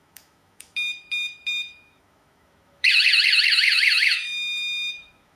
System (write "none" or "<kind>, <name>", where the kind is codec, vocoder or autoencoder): autoencoder, DAC-VAE